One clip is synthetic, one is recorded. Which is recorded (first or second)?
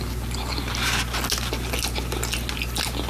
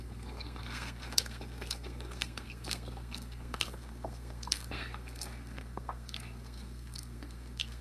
first